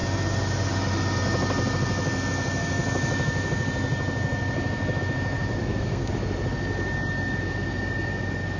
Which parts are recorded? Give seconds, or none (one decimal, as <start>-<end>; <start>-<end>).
0.0-5.6; 6.1-8.6